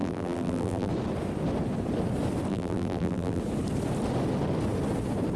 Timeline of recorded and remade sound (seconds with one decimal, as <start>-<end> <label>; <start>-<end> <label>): 0.0-0.9 remade; 0.9-2.5 recorded; 2.5-3.4 remade; 3.4-5.4 recorded